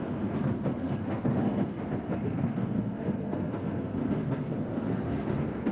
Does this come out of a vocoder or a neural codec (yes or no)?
yes